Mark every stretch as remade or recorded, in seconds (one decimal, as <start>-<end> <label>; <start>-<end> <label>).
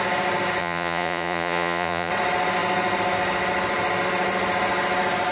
0.0-0.6 recorded; 0.6-2.1 remade; 2.1-5.3 recorded